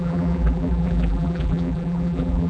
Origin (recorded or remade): remade